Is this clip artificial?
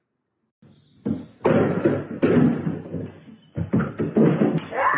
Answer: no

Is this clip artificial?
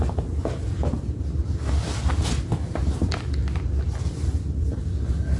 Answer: no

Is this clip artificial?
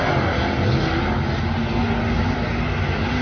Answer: no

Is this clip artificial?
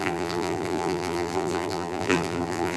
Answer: yes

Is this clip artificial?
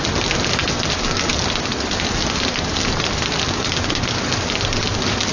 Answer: no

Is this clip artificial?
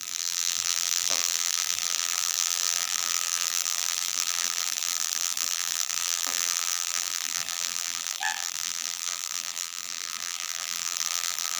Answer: yes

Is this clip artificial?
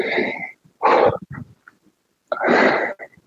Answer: no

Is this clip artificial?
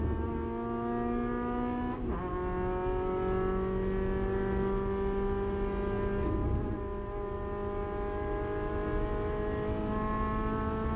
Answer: no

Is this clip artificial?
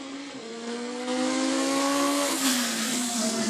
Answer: yes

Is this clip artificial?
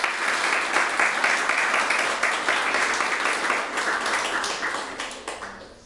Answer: no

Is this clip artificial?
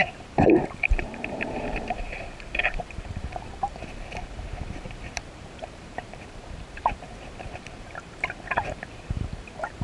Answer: yes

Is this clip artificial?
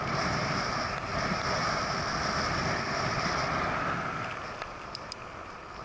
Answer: no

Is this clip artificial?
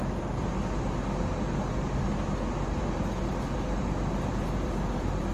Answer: no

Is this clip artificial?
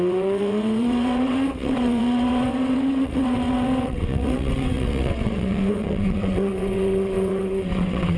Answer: yes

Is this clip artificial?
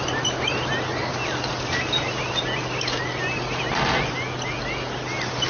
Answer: no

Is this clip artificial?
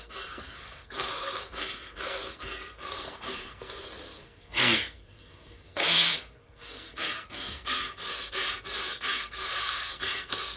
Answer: yes